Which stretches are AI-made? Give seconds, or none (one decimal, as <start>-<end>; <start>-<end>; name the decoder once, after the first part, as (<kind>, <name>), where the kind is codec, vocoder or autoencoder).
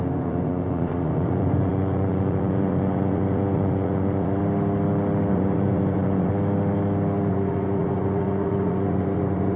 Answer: 0.0-4.4 (vocoder, Vocos); 5.3-6.3; 7.3-9.6